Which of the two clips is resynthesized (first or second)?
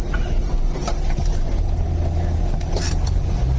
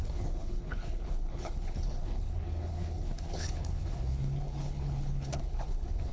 second